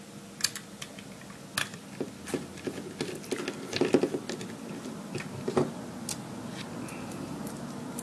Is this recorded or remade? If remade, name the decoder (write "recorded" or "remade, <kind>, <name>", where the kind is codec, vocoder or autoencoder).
recorded